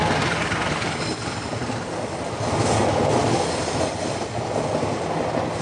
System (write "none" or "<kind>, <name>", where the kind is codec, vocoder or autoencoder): none